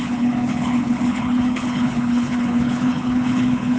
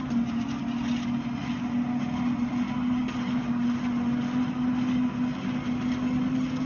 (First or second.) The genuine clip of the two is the second